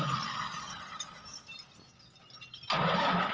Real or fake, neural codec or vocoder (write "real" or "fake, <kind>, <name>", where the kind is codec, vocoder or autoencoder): real